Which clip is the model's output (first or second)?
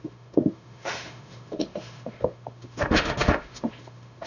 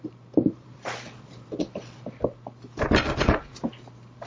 first